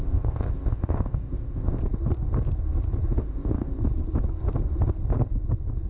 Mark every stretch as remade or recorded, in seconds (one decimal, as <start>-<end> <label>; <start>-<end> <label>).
0.0-1.8 remade; 1.8-3.2 recorded; 3.2-3.8 remade; 3.8-5.9 recorded